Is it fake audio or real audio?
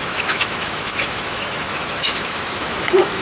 fake